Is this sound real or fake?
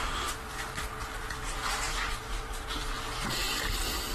fake